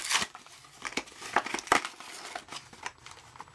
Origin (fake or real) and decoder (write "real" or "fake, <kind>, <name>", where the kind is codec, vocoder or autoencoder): real